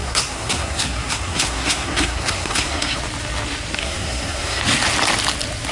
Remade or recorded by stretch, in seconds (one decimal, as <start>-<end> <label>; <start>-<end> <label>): 0.0-3.0 remade; 3.0-3.8 recorded; 3.8-4.6 remade; 4.6-5.7 recorded